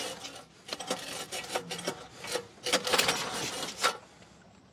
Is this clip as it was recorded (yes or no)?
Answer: yes